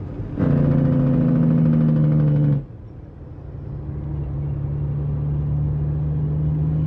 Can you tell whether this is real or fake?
real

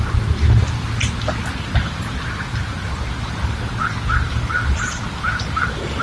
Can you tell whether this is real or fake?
real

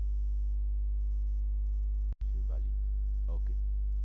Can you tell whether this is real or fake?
real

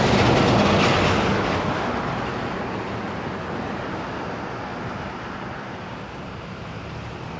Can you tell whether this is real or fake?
real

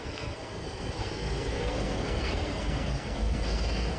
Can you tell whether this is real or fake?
fake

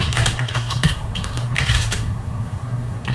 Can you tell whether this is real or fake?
fake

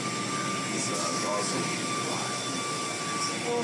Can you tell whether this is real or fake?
real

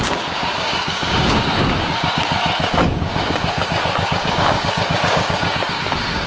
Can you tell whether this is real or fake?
fake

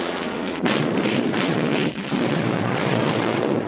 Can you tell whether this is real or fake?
fake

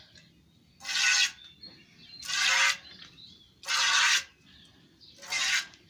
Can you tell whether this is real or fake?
real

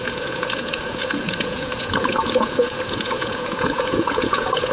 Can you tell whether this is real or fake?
fake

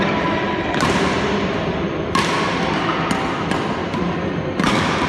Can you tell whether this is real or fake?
real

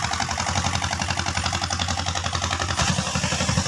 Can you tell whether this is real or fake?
real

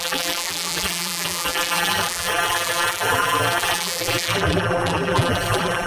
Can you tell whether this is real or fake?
fake